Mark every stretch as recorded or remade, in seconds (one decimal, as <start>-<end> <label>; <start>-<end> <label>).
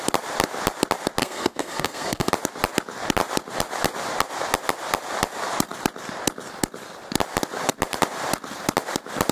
0.0-1.2 recorded; 1.2-2.3 remade; 2.3-9.3 recorded